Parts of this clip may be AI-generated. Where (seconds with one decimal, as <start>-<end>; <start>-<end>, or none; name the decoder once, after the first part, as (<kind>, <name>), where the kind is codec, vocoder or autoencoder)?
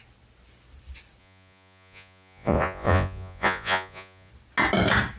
1.2-4.3 (vocoder, Vocos)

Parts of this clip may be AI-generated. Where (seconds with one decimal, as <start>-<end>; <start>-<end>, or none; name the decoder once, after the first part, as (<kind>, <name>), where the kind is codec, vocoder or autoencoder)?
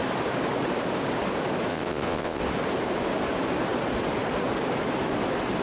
1.7-2.4 (vocoder, WaveNeXt)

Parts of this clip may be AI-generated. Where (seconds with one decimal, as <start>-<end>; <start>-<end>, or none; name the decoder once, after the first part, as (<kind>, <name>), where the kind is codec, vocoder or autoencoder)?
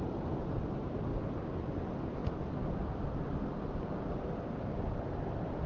none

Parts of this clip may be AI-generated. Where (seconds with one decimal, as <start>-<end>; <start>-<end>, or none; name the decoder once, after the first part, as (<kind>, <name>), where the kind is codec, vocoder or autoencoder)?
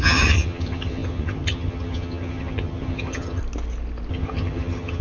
0.0-3.4 (vocoder, HiFi-GAN); 4.1-5.0